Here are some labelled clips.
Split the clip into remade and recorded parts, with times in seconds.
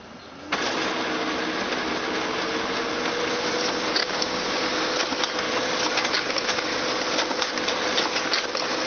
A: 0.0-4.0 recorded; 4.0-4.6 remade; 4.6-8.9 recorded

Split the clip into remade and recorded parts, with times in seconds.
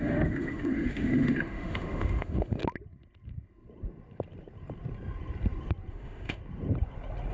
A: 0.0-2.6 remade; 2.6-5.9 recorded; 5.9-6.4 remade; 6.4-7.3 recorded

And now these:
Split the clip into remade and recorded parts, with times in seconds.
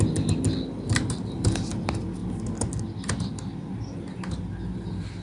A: 0.0-5.2 recorded